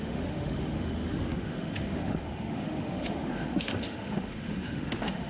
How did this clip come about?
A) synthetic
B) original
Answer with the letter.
A